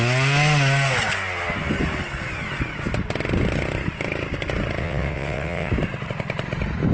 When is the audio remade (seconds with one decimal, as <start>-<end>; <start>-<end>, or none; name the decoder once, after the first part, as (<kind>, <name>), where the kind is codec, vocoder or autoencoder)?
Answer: 4.8-5.7 (vocoder, WaveNeXt)